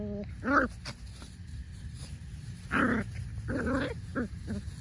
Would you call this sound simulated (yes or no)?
no